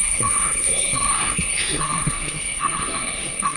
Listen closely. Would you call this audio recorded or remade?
remade